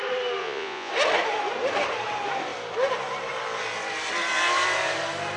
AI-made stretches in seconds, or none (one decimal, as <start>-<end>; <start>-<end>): 0.4-0.9